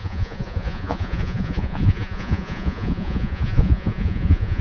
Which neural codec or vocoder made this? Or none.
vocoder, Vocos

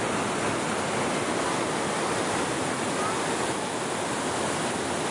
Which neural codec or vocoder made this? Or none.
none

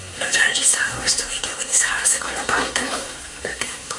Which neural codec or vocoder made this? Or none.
codec, SNAC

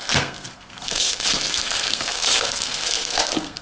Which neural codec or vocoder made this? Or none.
codec, SNAC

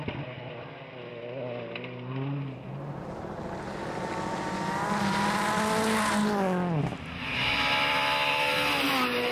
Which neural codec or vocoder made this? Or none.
none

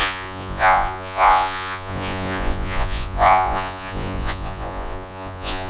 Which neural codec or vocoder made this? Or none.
vocoder, Vocos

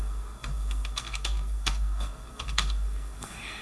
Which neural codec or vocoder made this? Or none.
codec, SNAC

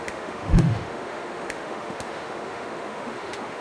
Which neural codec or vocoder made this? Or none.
autoencoder, DAC-VAE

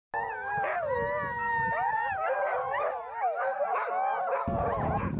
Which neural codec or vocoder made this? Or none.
none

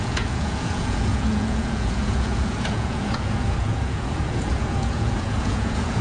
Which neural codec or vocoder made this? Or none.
vocoder, Vocos